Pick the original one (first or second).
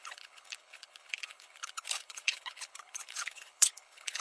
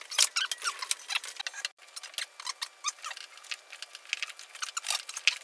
second